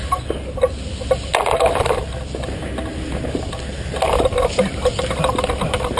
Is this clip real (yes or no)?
yes